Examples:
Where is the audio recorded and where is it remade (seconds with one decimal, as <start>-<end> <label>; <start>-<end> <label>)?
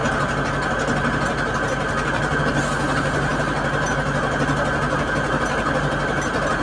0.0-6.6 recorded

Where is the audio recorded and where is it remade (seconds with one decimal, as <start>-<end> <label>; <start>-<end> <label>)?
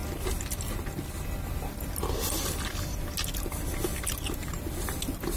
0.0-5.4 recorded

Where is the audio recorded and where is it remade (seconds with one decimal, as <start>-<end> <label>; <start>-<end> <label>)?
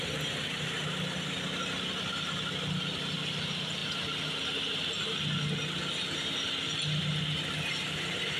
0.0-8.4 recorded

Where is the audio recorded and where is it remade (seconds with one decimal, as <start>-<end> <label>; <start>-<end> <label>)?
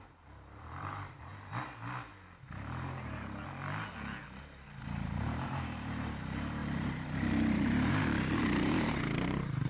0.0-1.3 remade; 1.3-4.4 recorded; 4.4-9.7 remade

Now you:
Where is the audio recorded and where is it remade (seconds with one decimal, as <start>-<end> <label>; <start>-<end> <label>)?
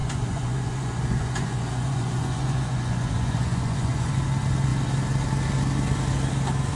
0.0-4.1 remade; 4.1-6.8 recorded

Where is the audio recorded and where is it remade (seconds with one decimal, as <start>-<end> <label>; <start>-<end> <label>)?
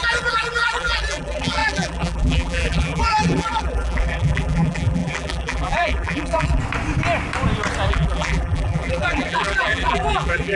0.0-6.6 remade; 6.6-7.9 recorded; 7.9-10.6 remade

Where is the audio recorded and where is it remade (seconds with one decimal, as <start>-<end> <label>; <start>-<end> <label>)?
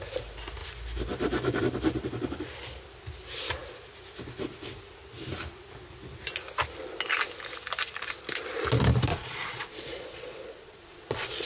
0.0-9.1 recorded; 9.1-11.5 remade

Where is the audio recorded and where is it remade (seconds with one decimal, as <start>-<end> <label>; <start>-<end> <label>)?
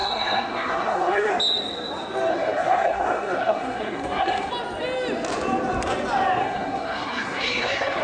0.0-1.3 remade; 1.3-2.3 recorded; 2.3-4.5 remade; 4.5-6.4 recorded; 6.4-8.0 remade